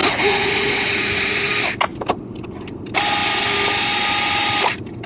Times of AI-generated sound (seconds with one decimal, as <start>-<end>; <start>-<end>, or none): 0.0-1.5